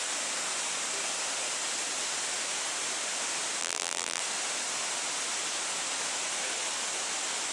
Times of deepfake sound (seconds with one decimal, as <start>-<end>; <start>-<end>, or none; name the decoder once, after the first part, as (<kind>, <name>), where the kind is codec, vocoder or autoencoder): 3.6-4.2 (vocoder, BigVGAN v2)